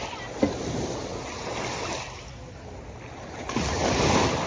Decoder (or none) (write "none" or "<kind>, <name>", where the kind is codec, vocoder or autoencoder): none